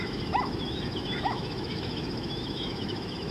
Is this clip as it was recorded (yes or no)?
no